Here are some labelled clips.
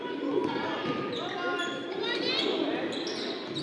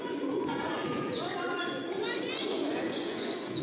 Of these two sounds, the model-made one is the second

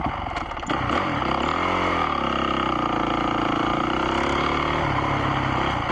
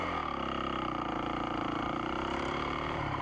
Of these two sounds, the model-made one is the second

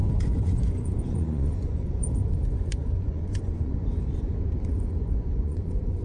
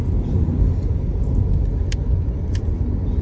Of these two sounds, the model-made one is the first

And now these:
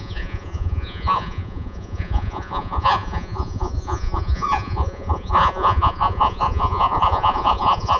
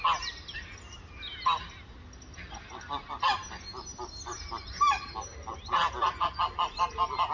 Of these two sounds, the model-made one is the first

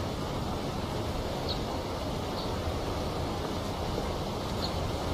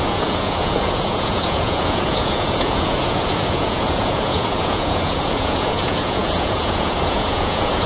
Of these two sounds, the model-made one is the second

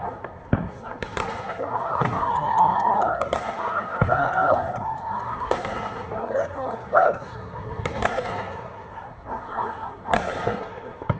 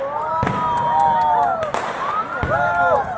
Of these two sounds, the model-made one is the first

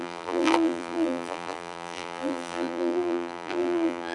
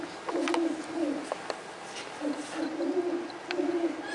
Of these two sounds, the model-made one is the first